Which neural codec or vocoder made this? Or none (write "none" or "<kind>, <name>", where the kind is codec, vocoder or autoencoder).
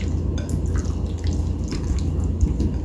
none